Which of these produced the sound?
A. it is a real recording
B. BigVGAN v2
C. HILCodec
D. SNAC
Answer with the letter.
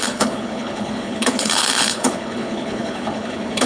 C